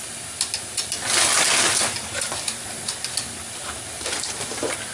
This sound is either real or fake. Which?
real